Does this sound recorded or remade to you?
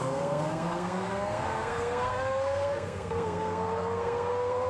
remade